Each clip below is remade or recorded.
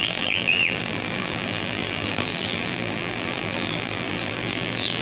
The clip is remade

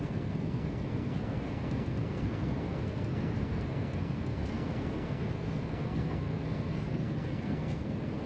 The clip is remade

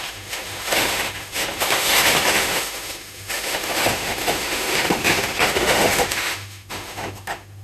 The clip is remade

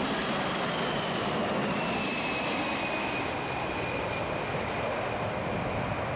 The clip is recorded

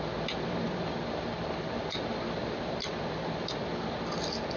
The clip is recorded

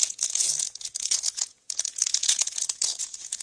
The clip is remade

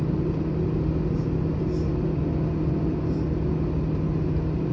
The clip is recorded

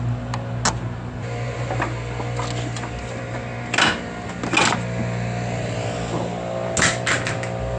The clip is recorded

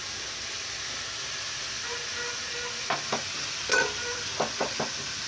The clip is recorded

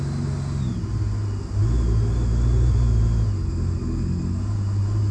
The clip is recorded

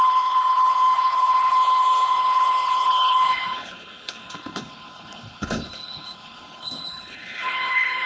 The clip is remade